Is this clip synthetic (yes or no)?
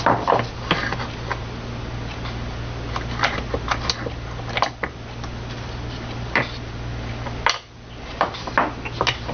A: no